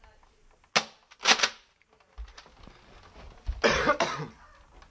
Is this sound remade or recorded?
recorded